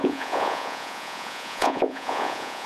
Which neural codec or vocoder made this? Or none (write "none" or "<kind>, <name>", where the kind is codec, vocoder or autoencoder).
vocoder, Vocos